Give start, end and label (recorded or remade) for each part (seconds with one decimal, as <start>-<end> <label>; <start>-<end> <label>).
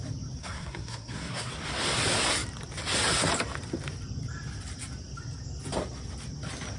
0.0-0.4 recorded; 0.4-1.5 remade; 1.5-6.8 recorded